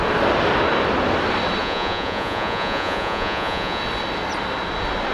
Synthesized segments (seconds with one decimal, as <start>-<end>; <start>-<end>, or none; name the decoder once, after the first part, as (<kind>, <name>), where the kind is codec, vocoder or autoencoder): 1.6-3.8 (vocoder, Vocos)